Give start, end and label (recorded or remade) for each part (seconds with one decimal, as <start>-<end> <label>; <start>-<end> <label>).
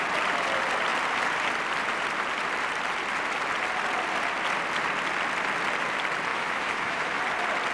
0.0-6.3 recorded; 6.3-7.2 remade; 7.2-7.7 recorded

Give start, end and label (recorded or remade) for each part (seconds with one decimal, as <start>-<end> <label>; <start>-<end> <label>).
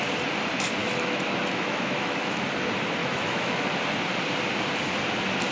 0.0-0.8 recorded; 0.8-2.4 remade; 2.4-3.0 recorded; 3.0-3.6 remade; 3.6-5.5 recorded